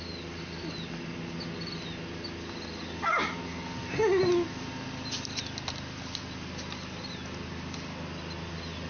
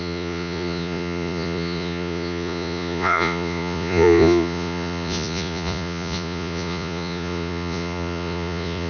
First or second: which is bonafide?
first